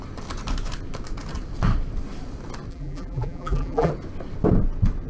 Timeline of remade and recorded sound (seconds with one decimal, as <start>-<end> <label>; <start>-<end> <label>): 0.0-2.7 recorded; 2.7-3.9 remade; 3.9-5.1 recorded